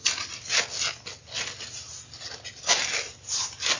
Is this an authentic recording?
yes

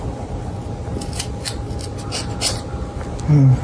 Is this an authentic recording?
yes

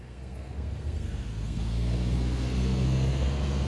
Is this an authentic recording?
no